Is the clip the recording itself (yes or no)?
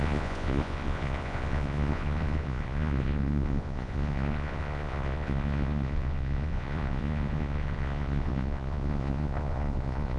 no